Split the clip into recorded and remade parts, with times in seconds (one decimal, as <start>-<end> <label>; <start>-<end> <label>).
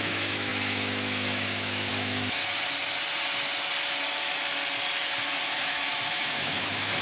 0.0-2.4 remade; 2.4-5.6 recorded; 5.6-7.0 remade